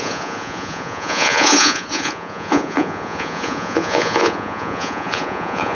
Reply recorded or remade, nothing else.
remade